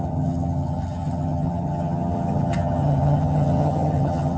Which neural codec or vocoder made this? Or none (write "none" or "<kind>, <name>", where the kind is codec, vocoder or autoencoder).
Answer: vocoder, HiFi-GAN